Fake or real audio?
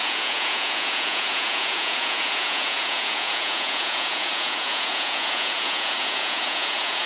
fake